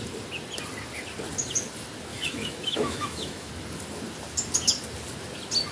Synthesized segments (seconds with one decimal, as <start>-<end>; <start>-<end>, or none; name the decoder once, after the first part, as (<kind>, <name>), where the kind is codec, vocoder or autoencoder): 2.1-3.5 (autoencoder, DAC-VAE)